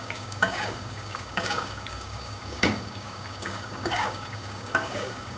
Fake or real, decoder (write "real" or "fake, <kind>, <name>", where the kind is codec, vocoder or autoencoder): fake, codec, DAC